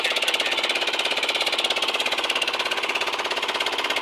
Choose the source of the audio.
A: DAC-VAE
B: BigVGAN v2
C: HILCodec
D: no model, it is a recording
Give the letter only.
D